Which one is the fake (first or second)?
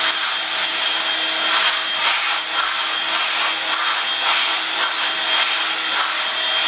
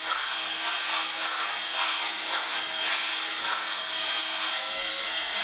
second